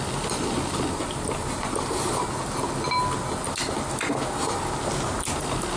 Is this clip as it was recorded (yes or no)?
yes